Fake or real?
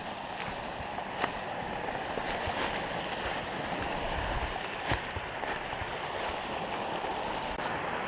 real